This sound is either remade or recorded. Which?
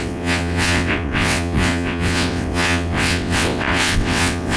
remade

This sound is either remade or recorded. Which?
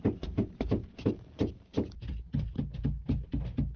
recorded